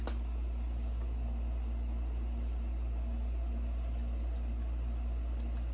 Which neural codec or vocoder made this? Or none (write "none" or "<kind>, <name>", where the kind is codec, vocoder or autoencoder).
none